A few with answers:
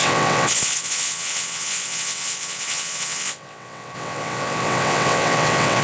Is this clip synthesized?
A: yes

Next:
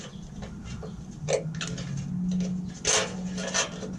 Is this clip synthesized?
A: no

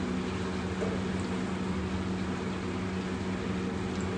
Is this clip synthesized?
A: no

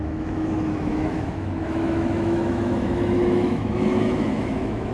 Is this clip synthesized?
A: yes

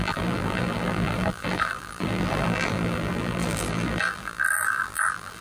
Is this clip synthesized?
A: yes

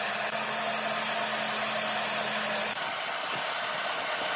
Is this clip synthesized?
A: no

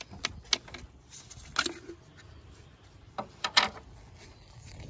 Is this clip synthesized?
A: no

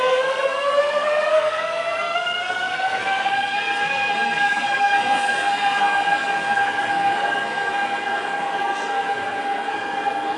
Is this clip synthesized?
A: yes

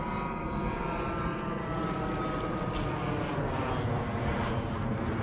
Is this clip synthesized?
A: no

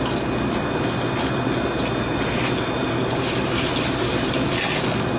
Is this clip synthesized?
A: no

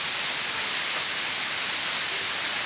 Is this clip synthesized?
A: no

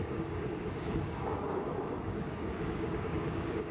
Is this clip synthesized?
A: yes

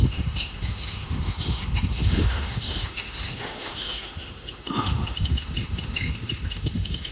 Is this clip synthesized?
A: yes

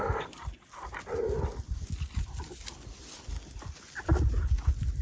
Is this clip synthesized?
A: no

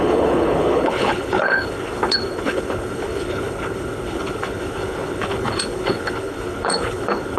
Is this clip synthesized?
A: yes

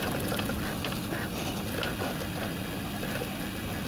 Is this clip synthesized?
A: no